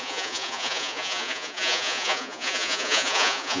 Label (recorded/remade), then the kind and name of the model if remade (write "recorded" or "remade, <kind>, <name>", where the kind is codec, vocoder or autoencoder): remade, vocoder, Vocos